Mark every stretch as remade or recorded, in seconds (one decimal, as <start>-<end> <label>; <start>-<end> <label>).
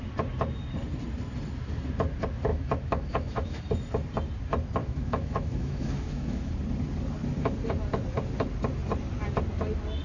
0.0-2.5 recorded; 2.5-3.6 remade; 3.6-4.8 recorded; 4.8-6.5 remade; 6.5-10.0 recorded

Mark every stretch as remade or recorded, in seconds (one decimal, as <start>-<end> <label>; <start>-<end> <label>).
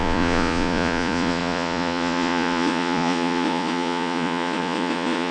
0.0-5.3 remade